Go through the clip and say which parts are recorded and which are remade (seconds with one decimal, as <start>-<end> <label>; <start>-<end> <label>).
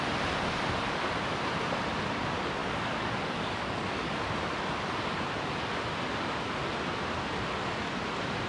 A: 0.0-2.6 recorded; 2.6-4.1 remade; 4.1-8.5 recorded